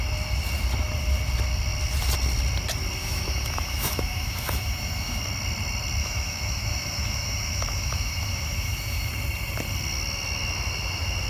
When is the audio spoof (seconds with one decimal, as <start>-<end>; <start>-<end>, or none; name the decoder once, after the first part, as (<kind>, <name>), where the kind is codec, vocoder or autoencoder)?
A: 3.0-5.2 (autoencoder, DAC-VAE); 6.0-9.1